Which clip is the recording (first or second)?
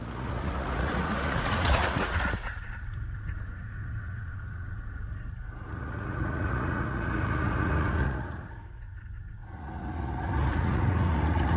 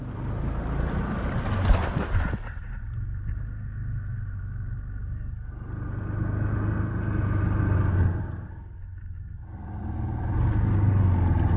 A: second